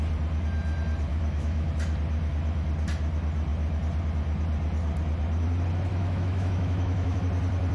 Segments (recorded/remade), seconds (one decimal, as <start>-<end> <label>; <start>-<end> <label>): 0.0-1.1 recorded; 1.1-1.7 remade; 1.7-5.9 recorded; 5.9-7.2 remade; 7.2-7.7 recorded